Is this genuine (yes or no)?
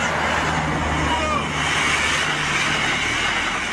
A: yes